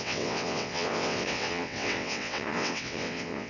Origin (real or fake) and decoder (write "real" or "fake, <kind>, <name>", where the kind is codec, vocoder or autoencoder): fake, vocoder, WaveNeXt